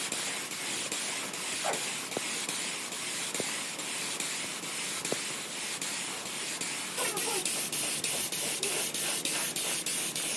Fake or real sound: real